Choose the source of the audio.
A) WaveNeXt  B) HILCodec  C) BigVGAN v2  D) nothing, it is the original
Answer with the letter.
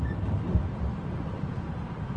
C